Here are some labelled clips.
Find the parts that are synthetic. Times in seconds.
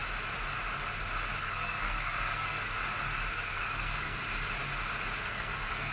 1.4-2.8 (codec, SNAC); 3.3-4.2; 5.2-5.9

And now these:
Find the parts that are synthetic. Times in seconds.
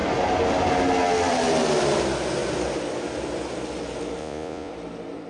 4.2-4.7 (vocoder, Vocos)